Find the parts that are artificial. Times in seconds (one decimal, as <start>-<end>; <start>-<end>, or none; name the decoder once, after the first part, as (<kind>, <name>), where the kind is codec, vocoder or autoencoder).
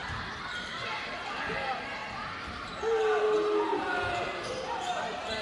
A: 0.0-1.5 (vocoder, BigVGAN v2)